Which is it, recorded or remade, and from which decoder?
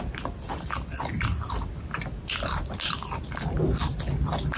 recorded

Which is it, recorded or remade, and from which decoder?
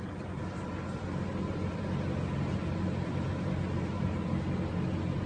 recorded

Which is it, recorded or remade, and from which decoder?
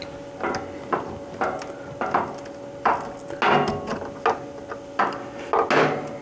recorded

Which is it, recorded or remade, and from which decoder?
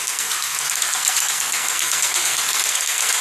remade, codec, SNAC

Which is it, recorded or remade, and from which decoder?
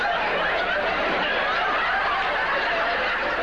recorded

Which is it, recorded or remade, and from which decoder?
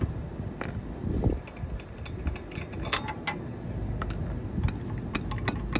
recorded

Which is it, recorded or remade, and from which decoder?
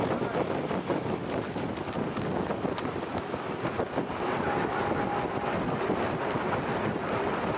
recorded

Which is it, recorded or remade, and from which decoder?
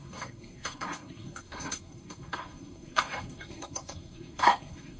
remade, codec, SNAC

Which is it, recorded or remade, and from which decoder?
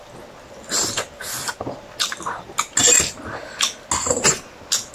recorded